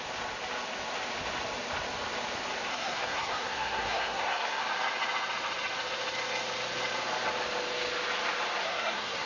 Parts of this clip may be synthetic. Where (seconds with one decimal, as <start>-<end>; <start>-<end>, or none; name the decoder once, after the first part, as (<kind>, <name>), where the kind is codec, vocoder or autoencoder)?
2.7-4.6 (codec, SNAC); 8.6-9.3